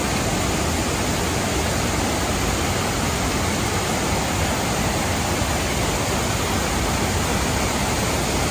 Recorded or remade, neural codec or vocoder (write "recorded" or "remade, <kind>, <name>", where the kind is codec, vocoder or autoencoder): recorded